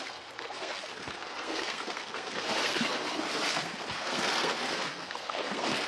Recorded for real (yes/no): no